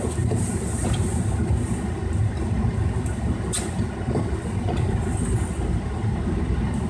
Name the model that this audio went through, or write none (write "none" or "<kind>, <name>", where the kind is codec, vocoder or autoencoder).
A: none